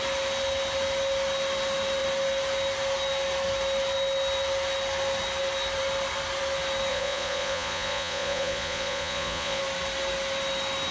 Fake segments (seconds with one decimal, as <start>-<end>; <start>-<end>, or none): 6.9-9.6